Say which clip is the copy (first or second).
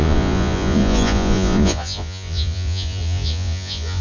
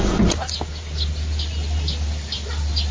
first